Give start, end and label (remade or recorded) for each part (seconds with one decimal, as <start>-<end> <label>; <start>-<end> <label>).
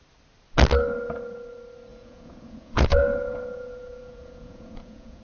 0.0-1.9 recorded; 1.9-5.2 remade